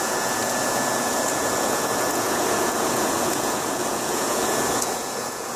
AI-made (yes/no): yes